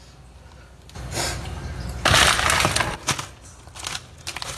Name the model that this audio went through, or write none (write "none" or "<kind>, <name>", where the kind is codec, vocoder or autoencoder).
none